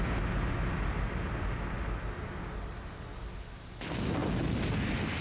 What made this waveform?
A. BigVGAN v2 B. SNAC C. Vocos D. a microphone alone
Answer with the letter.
D